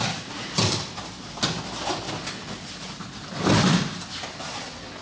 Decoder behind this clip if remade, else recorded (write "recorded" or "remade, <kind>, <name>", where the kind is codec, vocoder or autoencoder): recorded